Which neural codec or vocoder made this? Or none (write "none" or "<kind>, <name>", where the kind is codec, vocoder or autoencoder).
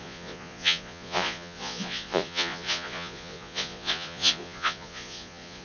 vocoder, Vocos